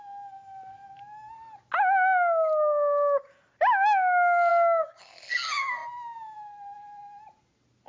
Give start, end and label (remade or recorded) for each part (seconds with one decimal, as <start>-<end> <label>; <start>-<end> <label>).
0.0-7.9 recorded